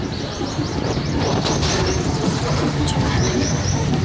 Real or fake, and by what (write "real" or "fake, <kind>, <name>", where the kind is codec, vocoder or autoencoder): fake, vocoder, BigVGAN v2